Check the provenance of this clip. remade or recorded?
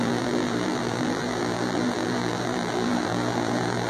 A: remade